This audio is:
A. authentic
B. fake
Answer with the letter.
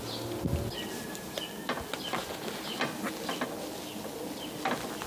A